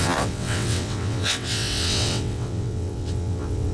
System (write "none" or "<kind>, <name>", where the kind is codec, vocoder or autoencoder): vocoder, WaveNeXt